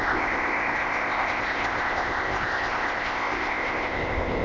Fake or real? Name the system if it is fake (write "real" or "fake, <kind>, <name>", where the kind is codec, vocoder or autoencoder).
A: fake, codec, ZipCodec